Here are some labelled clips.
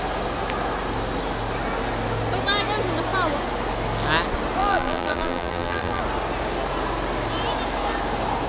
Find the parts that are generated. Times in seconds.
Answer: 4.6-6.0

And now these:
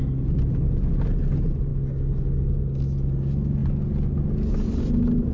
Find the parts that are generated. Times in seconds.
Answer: none